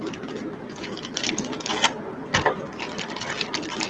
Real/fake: real